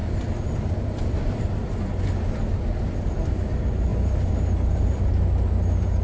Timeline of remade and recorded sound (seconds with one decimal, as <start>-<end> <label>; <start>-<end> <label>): 0.0-2.0 remade; 2.0-3.9 recorded; 3.9-5.0 remade; 5.0-6.0 recorded